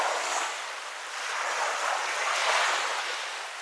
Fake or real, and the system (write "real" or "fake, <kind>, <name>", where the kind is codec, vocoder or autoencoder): real